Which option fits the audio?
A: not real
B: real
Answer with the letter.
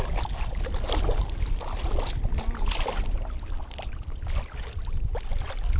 B